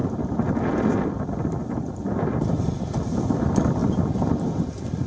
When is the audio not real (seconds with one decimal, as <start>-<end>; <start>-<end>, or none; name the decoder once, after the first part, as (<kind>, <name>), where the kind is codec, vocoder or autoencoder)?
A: none